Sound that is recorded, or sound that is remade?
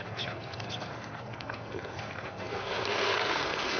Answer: remade